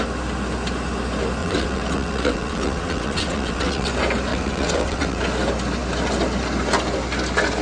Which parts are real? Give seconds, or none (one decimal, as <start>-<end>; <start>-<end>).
0.0-1.4; 3.9-4.3; 5.2-7.6